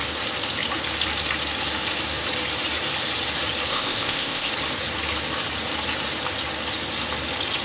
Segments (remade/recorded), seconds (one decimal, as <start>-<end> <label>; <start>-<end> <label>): 0.0-3.7 recorded; 3.7-4.5 remade; 4.5-7.6 recorded